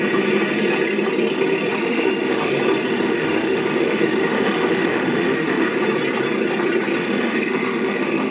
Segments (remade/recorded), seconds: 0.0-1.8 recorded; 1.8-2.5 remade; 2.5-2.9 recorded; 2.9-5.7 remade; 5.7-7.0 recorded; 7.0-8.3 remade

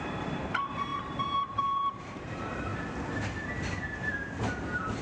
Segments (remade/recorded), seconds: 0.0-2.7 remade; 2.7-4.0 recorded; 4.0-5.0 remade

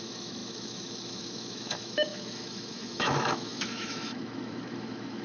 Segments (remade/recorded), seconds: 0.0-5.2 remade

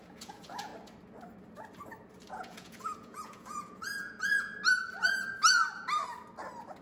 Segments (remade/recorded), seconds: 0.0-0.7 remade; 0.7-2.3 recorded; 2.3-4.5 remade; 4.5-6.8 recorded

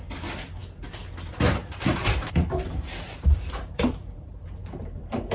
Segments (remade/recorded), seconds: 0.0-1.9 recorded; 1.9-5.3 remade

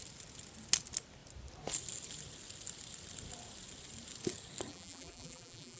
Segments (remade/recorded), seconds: 0.0-4.7 recorded; 4.7-5.8 remade

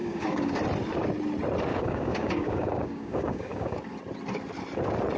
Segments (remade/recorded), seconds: 0.0-0.6 remade; 0.6-1.7 recorded; 1.7-3.8 remade; 3.8-5.2 recorded

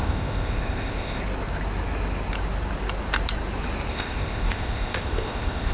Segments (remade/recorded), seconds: 0.0-1.2 remade; 1.2-3.9 recorded; 3.9-5.7 remade